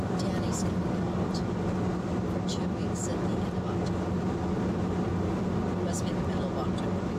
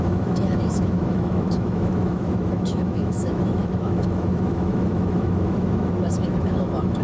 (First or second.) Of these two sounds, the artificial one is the second